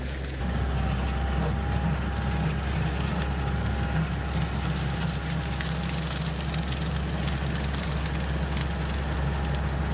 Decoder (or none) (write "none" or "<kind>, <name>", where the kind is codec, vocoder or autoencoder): none